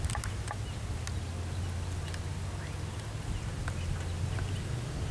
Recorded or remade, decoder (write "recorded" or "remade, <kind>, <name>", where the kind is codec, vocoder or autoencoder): recorded